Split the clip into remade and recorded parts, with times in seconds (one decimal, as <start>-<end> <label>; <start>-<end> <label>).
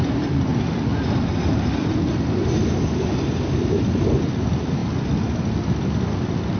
0.0-0.5 recorded; 0.5-3.7 remade; 3.7-6.6 recorded